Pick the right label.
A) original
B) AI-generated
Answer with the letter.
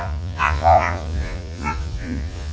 B